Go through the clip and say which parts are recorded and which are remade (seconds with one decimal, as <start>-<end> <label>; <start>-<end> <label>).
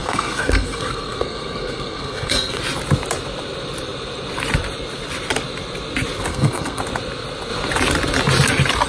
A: 0.0-2.6 remade; 2.6-6.3 recorded; 6.3-6.8 remade; 6.8-8.9 recorded